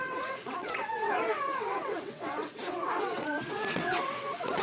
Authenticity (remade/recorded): remade